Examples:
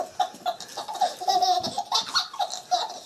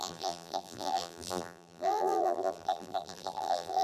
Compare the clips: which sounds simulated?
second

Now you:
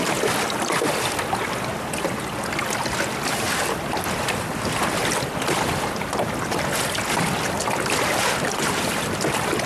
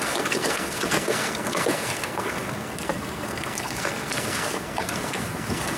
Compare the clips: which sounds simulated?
second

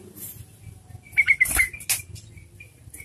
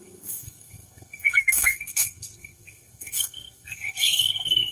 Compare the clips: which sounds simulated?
second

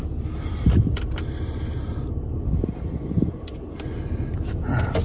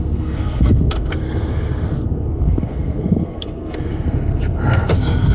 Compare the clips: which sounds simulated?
second